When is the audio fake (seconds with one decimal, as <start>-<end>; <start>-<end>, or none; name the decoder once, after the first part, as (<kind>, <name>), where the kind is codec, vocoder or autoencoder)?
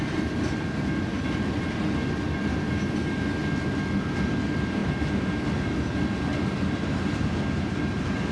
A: none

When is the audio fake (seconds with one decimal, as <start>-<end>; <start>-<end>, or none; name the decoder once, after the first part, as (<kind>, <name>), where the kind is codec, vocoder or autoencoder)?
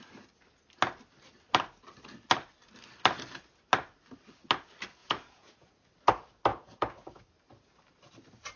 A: 5.0-5.9 (vocoder, Vocos); 6.5-7.2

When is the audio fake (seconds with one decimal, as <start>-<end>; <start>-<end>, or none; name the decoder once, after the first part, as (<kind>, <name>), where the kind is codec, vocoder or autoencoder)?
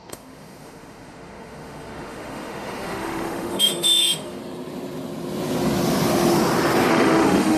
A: 0.0-4.4 (autoencoder, DAC-VAE); 6.9-7.6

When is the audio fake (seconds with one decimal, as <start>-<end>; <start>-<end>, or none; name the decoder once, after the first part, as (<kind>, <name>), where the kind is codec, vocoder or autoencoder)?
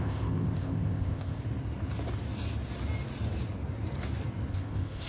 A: 0.0-1.4 (codec, ZipCodec); 4.5-5.1